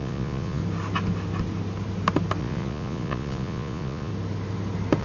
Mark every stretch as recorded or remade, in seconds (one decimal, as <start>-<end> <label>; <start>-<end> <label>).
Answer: 0.0-0.6 remade; 0.6-2.4 recorded; 2.4-4.1 remade; 4.1-5.0 recorded